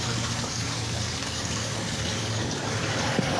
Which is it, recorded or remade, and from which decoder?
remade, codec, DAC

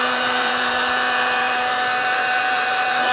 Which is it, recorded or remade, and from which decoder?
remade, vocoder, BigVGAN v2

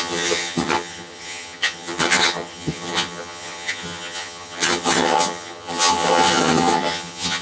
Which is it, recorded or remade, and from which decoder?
remade, vocoder, HiFi-GAN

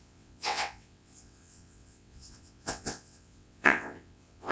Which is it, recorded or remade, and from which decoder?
remade, vocoder, WaveNeXt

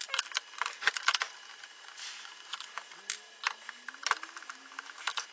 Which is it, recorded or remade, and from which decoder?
recorded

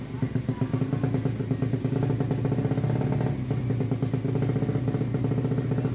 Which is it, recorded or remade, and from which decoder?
recorded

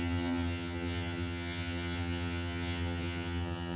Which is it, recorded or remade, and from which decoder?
remade, vocoder, HiFi-GAN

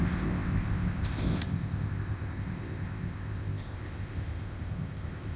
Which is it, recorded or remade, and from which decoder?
remade, codec, ZipCodec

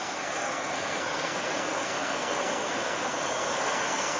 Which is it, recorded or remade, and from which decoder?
remade, codec, SNAC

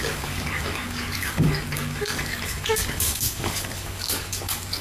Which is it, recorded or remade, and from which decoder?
remade, codec, DAC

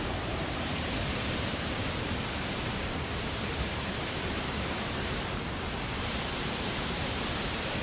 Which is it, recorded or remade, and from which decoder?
remade, vocoder, BigVGAN v2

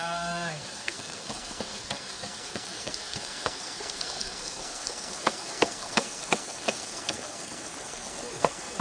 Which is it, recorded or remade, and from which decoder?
remade, codec, SNAC